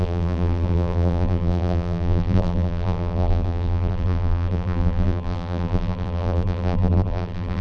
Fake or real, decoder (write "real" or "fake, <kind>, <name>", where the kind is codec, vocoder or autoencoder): fake, vocoder, BigVGAN v2